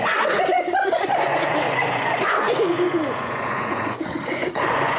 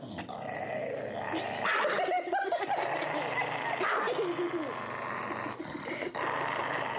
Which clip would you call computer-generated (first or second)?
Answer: first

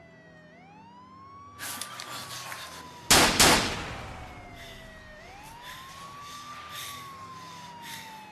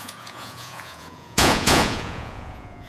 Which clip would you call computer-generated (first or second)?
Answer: second